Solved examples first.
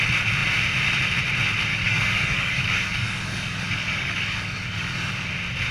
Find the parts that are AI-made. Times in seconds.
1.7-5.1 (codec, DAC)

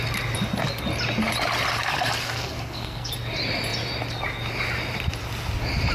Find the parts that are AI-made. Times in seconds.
2.2-3.1 (codec, SNAC)

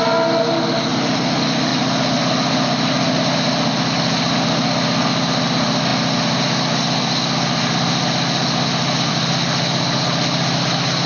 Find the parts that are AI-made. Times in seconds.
none